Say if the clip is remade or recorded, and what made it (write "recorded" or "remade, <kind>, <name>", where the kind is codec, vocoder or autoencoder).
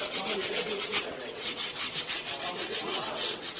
remade, vocoder, WaveNeXt